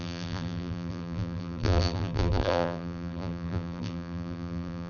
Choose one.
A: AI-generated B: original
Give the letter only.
A